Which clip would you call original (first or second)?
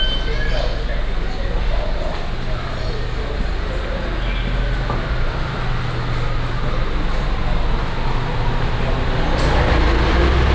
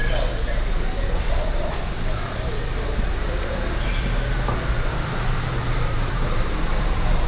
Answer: first